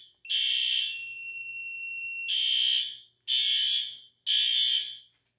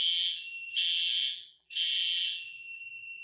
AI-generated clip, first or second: second